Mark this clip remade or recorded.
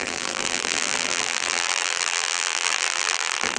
remade